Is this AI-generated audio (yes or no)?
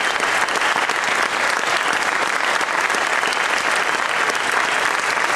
no